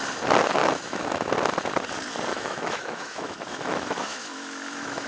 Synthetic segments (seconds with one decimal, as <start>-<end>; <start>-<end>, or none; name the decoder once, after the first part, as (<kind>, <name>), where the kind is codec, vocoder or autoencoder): 0.6-1.3 (autoencoder, DAC-VAE); 2.3-5.1